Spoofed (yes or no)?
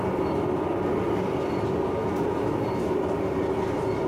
no